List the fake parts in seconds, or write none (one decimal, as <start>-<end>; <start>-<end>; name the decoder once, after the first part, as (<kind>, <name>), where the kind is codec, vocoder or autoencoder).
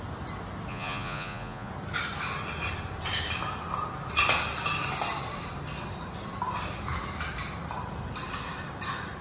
0.7-1.7 (vocoder, Vocos)